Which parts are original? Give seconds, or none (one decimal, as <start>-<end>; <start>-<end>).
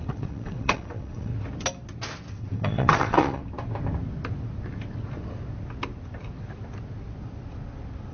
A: 1.3-2.3; 3.4-8.1